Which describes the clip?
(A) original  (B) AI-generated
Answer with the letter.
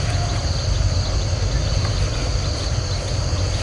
A